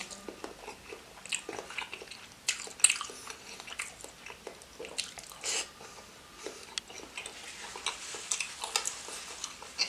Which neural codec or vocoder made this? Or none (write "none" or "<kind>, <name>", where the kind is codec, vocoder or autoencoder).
none